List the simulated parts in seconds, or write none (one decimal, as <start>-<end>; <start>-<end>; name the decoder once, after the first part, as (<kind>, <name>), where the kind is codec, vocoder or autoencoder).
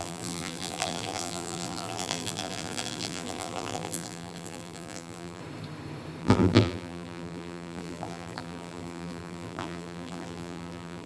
0.0-5.4 (vocoder, BigVGAN v2); 6.2-11.1